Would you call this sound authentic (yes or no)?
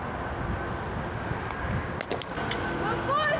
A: yes